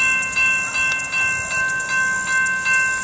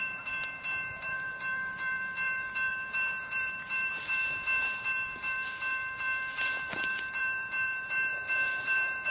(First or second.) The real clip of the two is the first